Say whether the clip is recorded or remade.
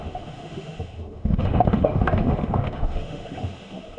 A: remade